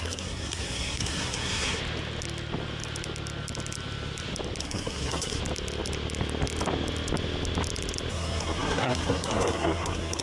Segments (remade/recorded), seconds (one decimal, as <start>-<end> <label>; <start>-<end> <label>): 0.0-1.8 remade; 1.8-4.6 recorded; 4.6-5.4 remade; 5.4-8.1 recorded; 8.1-10.2 remade